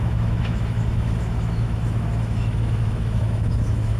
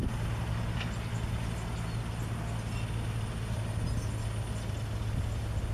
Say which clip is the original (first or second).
second